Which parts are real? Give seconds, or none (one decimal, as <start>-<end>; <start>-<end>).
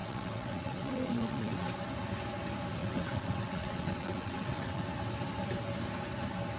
1.7-2.8; 4.8-6.6